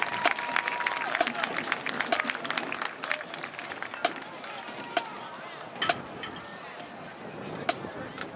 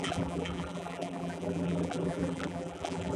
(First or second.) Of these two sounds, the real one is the first